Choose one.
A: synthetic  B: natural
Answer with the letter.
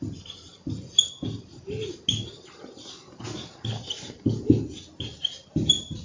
B